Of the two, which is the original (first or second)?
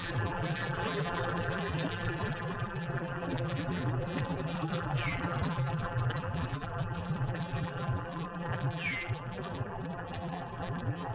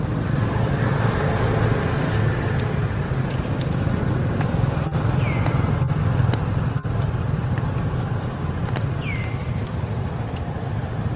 second